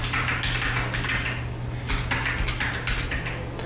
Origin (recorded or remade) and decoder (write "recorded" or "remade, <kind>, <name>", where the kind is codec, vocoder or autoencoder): recorded